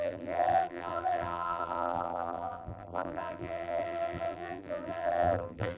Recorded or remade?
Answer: remade